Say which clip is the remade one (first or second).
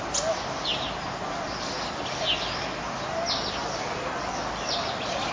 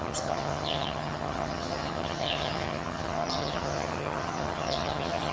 second